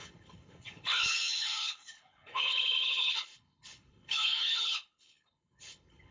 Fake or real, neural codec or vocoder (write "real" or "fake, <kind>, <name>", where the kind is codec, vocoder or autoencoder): fake, codec, HILCodec